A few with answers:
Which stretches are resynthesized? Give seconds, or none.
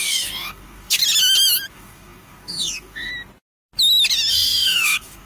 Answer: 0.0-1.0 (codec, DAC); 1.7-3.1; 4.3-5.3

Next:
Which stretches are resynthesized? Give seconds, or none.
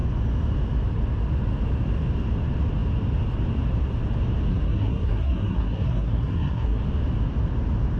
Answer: 4.5-6.8 (codec, SNAC)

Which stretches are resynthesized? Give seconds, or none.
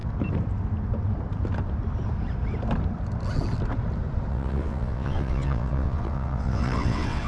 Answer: 4.3-7.3 (vocoder, WaveNeXt)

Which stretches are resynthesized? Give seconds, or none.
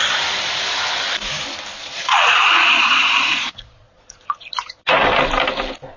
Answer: 1.8-4.8 (vocoder, Vocos)